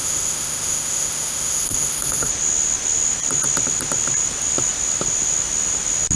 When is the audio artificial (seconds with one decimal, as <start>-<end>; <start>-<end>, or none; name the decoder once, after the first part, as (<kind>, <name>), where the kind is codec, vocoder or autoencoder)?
0.0-2.3 (autoencoder, DAC-VAE)